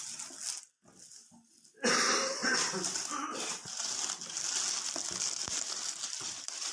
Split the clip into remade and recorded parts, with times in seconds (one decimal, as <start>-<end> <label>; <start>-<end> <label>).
0.0-6.7 recorded